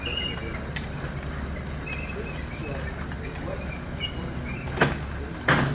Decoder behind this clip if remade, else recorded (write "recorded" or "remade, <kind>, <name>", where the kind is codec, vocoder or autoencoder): recorded